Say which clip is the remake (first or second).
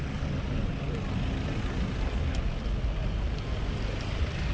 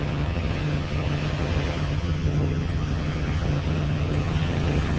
second